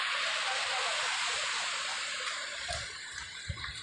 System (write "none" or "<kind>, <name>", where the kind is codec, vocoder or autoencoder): none